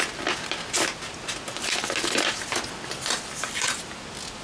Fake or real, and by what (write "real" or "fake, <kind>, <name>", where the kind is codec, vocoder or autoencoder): real